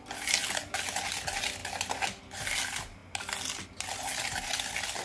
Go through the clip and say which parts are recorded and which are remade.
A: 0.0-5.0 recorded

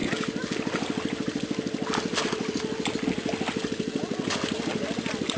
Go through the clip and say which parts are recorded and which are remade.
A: 0.0-5.4 recorded

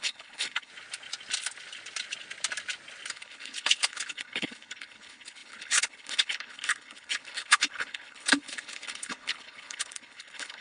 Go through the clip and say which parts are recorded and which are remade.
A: 0.0-0.7 remade; 0.7-3.1 recorded; 3.1-10.6 remade

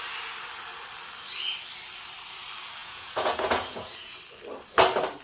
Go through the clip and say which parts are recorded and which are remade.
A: 0.0-2.8 recorded; 2.8-4.2 remade; 4.2-5.2 recorded

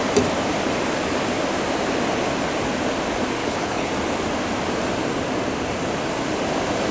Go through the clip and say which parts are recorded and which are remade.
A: 0.0-3.4 recorded; 3.4-3.9 remade; 3.9-6.9 recorded

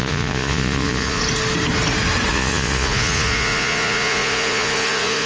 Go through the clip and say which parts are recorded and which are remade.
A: 0.0-1.2 remade; 1.2-2.3 recorded; 2.3-5.3 remade